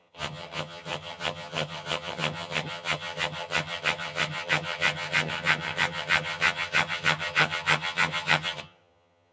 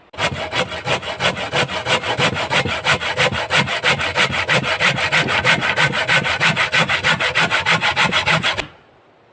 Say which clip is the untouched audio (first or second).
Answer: second